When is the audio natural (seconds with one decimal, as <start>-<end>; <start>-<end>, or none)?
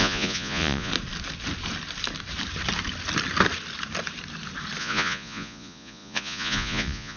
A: 0.9-4.8